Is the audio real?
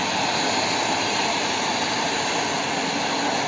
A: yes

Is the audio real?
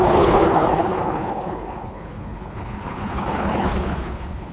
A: no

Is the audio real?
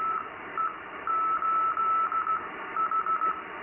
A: no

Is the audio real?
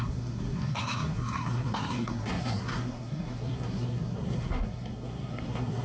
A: no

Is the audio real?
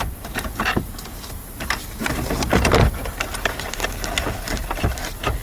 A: yes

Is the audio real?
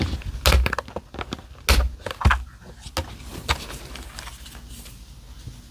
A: yes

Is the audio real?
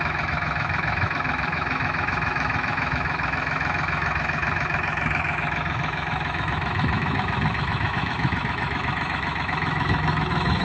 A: no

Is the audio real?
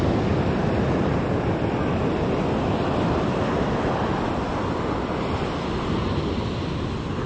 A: yes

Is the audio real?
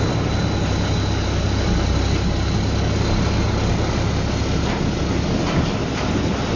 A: yes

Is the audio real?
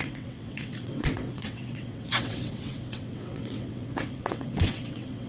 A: no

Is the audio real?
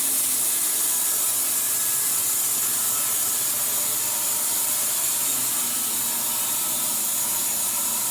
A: no